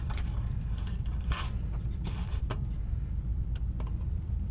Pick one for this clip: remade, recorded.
remade